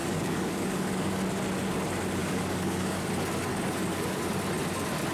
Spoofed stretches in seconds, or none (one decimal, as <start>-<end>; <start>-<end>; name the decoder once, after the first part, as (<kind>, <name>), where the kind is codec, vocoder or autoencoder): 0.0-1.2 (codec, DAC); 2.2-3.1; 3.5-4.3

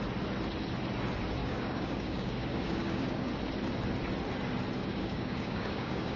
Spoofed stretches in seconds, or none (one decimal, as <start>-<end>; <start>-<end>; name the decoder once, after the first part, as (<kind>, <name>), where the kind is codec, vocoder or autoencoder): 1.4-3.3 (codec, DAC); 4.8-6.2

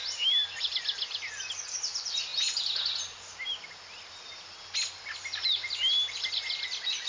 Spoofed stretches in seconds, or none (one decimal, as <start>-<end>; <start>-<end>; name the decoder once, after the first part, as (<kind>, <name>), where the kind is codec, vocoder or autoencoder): none

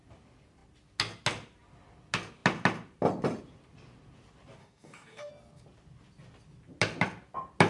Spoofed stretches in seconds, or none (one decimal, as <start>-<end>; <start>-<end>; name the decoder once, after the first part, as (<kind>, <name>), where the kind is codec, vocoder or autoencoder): 4.6-5.3 (codec, DAC)

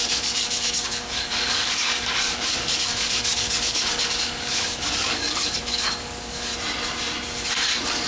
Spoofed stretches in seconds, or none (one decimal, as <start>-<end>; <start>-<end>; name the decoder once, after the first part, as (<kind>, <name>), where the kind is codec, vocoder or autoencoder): 0.0-6.5 (codec, DAC)

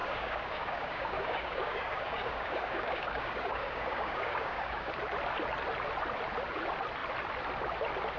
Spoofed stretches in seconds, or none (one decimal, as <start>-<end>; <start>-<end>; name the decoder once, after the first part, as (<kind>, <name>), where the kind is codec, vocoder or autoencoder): 0.0-4.9 (codec, DAC)

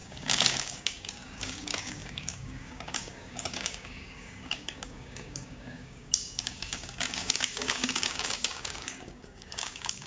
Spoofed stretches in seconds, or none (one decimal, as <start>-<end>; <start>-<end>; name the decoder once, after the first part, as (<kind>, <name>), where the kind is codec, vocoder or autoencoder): 0.0-10.1 (codec, DAC)

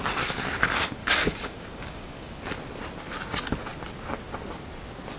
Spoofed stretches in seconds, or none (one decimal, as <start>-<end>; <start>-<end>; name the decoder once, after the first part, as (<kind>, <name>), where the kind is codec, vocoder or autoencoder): 1.0-2.4 (codec, DAC)